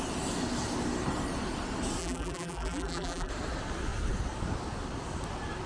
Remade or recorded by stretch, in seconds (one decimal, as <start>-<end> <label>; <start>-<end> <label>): 0.0-2.0 recorded; 2.0-3.3 remade; 3.3-5.7 recorded